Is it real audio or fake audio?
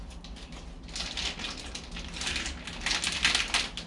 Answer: real